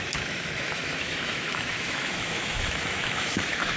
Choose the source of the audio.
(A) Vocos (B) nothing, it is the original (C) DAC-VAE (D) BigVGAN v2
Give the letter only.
C